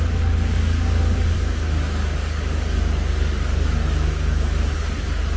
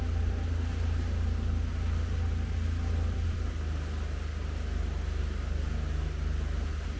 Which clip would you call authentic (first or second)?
second